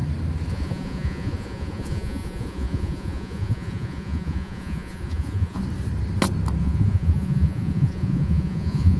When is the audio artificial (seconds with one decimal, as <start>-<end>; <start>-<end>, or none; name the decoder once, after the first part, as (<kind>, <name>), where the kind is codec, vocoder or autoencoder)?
0.5-5.6 (vocoder, Vocos); 6.6-9.0